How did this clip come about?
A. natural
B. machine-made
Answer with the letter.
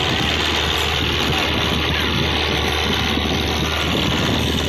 A